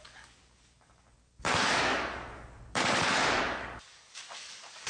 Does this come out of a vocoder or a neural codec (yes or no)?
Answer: yes